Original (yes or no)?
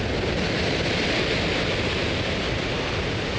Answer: yes